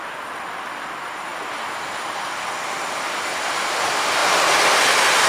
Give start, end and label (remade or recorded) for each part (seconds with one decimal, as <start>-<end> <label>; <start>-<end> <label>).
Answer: 0.0-5.3 recorded